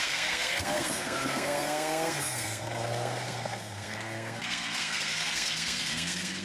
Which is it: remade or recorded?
remade